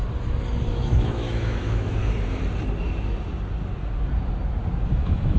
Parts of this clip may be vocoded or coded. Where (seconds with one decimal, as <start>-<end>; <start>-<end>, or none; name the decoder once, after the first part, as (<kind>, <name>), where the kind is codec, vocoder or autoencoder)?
0.7-2.0 (autoencoder, DAC-VAE); 4.9-5.4